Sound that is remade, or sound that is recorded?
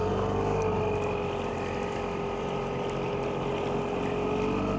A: recorded